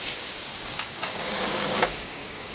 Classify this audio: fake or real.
fake